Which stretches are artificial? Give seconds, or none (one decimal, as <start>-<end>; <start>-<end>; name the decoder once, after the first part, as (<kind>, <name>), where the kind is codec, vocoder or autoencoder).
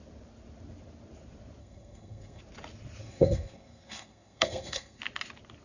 1.6-2.4 (codec, SNAC); 3.0-5.0